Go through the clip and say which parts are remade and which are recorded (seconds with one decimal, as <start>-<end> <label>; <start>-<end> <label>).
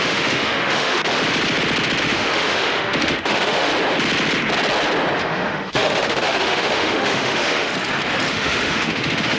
0.0-1.0 remade; 1.0-2.0 recorded; 2.0-3.7 remade; 3.7-5.2 recorded; 5.2-7.7 remade; 7.7-8.3 recorded; 8.3-9.4 remade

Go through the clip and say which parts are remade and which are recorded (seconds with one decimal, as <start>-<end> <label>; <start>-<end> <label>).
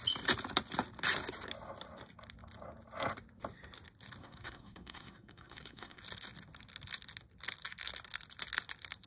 0.0-4.2 recorded; 4.2-6.0 remade; 6.0-9.1 recorded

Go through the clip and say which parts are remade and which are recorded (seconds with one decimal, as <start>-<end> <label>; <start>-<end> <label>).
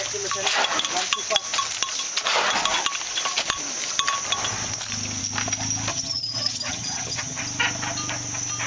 0.0-5.9 recorded; 5.9-7.4 remade; 7.4-8.7 recorded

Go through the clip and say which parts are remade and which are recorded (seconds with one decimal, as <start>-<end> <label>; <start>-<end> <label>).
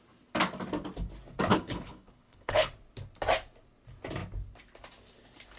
0.0-1.5 recorded; 1.5-2.7 remade; 2.7-5.6 recorded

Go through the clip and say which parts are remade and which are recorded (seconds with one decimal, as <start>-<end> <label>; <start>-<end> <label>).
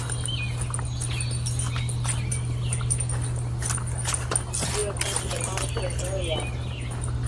0.0-7.3 recorded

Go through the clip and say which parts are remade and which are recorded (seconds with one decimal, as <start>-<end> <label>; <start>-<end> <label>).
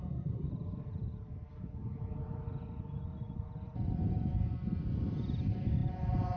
0.0-0.5 remade; 0.5-6.4 recorded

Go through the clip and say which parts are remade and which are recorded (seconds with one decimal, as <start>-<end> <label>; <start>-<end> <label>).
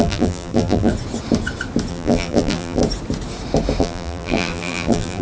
0.0-0.9 remade; 0.9-1.9 recorded; 1.9-2.8 remade; 2.8-3.8 recorded; 3.8-5.2 remade